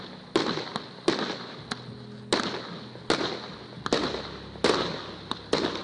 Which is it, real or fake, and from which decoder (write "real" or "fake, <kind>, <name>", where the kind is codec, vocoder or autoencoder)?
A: real